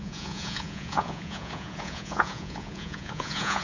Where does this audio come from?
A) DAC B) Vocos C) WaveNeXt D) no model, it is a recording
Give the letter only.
B